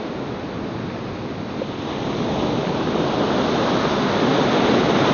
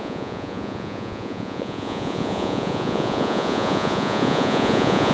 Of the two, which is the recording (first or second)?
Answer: first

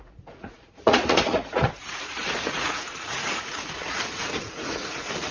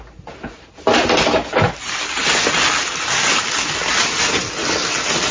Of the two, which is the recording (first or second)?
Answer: second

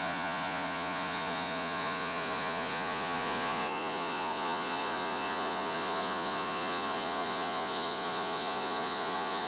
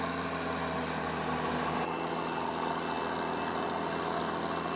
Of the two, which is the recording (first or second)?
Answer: second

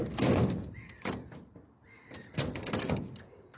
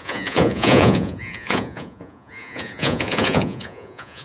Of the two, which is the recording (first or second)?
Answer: first